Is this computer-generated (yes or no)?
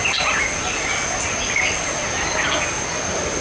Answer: no